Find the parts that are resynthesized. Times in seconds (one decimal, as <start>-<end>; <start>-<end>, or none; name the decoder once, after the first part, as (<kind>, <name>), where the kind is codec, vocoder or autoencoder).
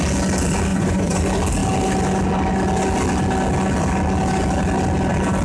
0.7-1.2 (vocoder, Vocos)